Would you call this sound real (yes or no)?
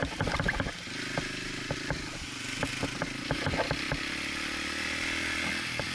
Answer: yes